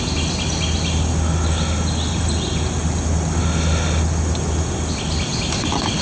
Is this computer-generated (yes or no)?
no